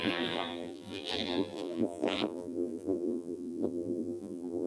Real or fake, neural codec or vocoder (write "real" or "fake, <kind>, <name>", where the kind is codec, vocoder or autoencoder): fake, vocoder, BigVGAN v2